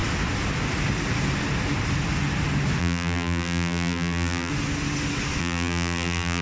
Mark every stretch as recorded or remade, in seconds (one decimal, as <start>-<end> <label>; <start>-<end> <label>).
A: 0.0-2.8 recorded; 2.8-4.5 remade; 4.5-5.4 recorded; 5.4-6.4 remade